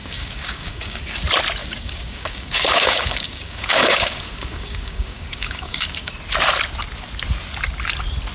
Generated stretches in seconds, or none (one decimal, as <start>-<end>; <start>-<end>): 0.0-1.0; 1.6-6.1